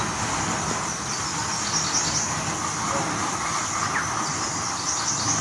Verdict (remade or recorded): recorded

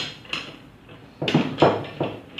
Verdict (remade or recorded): recorded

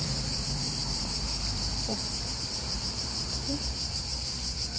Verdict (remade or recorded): remade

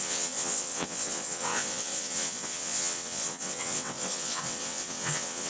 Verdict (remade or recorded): remade